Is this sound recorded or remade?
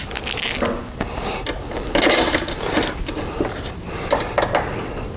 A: recorded